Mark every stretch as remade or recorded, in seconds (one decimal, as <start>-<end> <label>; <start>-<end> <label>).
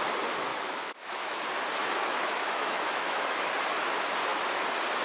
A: 0.0-0.5 recorded; 0.5-1.4 remade; 1.4-1.8 recorded; 1.8-3.5 remade; 3.5-5.0 recorded